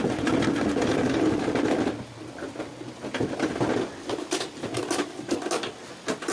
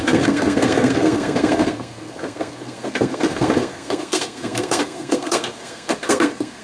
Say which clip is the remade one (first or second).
second